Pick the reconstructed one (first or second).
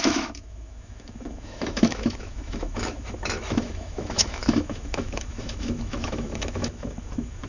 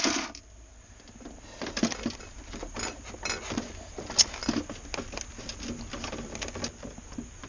first